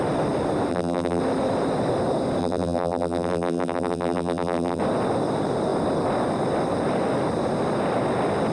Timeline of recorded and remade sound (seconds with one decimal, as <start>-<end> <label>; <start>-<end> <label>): 0.0-0.7 recorded; 0.7-1.2 remade; 1.2-2.4 recorded; 2.4-4.8 remade; 4.8-8.5 recorded